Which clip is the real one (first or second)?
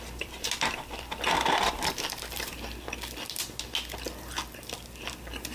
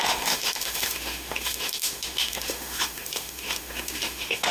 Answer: first